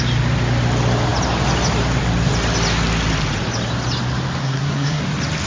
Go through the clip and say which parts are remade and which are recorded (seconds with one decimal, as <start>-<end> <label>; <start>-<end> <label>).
0.0-4.4 recorded; 4.4-5.0 remade; 5.0-5.5 recorded